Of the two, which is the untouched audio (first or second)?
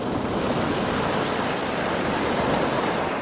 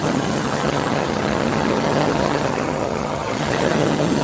first